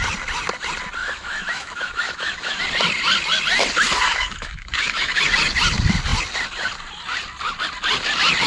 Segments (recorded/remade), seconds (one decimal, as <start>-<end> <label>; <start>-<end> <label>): 0.0-1.0 recorded; 1.0-2.6 remade; 2.6-4.1 recorded; 4.1-5.2 remade; 5.2-8.5 recorded